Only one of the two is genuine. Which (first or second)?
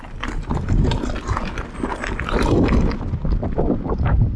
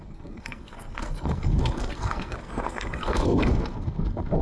first